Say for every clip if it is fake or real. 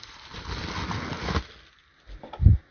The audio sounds real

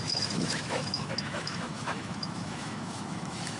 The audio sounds fake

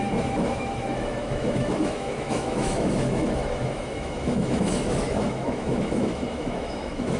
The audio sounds fake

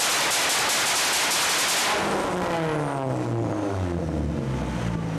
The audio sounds real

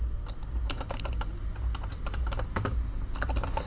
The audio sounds real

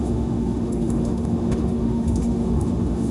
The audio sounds fake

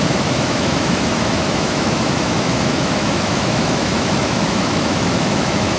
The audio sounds fake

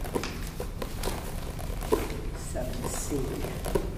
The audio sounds real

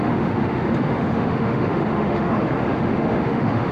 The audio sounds fake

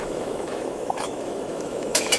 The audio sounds fake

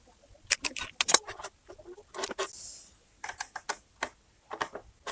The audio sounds real